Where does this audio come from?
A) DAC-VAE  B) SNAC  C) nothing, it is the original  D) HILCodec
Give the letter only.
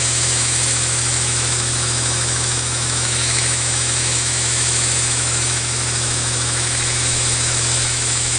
A